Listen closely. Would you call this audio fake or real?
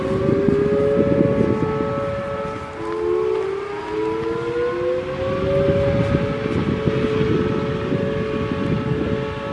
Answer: real